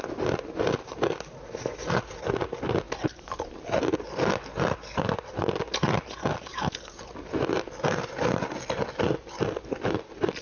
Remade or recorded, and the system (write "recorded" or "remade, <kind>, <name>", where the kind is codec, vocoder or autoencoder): recorded